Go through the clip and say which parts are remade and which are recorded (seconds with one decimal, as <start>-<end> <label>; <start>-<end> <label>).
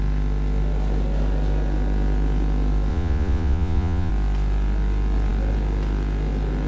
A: 0.0-2.9 recorded; 2.9-4.1 remade; 4.1-6.7 recorded